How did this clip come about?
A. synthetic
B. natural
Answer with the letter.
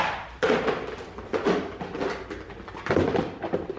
B